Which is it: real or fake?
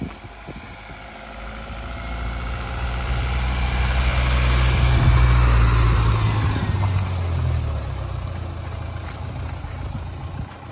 real